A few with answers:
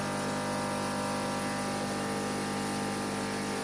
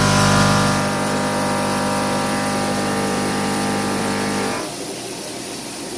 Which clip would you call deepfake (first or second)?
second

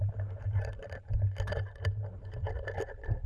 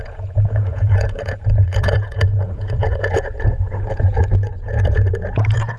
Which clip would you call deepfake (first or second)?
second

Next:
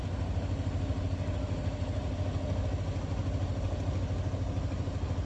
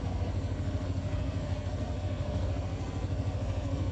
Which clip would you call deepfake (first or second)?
second